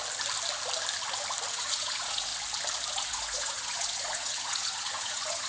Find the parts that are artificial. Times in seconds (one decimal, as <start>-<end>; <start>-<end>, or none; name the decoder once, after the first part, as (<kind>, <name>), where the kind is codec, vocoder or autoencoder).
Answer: 1.5-2.3 (vocoder, Vocos); 2.9-5.5